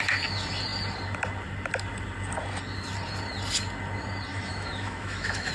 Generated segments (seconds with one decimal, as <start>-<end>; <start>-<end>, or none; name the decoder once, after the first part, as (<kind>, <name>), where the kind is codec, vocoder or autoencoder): 4.3-5.5 (autoencoder, DAC-VAE)